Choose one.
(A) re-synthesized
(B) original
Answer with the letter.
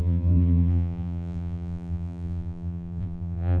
A